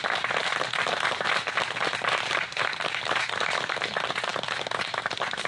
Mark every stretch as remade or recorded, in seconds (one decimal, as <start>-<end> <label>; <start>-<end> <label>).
0.0-5.5 recorded